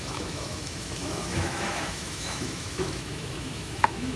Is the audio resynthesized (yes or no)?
yes